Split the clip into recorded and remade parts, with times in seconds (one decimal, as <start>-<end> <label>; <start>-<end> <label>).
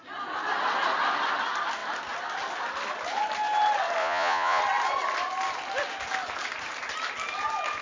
0.0-4.0 recorded; 4.0-4.6 remade; 4.6-7.8 recorded